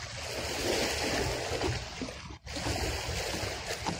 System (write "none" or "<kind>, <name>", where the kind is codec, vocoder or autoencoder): none